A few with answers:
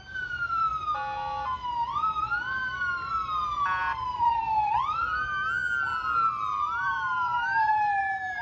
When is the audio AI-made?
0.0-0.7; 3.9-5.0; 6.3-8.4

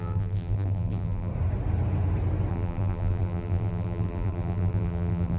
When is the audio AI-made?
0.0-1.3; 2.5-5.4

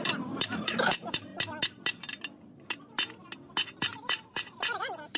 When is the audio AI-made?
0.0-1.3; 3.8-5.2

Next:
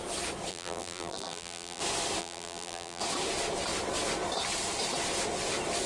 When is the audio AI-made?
0.5-1.8; 2.2-3.0

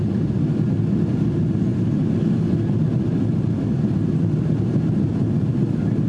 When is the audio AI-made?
none